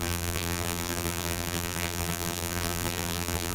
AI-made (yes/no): yes